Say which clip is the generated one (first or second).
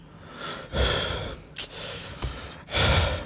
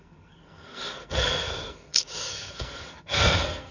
second